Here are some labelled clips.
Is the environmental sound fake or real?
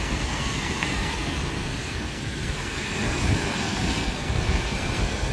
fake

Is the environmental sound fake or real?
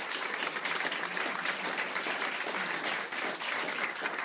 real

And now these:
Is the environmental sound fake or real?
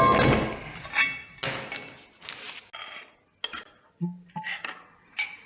real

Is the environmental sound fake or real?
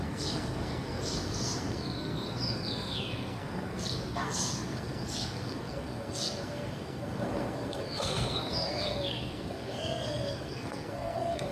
fake